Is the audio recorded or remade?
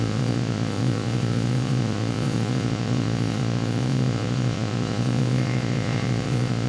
remade